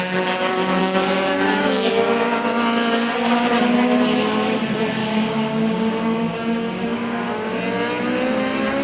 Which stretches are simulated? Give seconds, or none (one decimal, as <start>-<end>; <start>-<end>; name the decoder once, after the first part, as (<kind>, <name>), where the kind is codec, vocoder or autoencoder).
0.8-1.9 (codec, DAC); 5.0-7.6